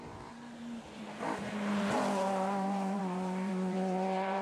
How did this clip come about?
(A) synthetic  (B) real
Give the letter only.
A